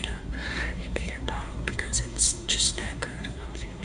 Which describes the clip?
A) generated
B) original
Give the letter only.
A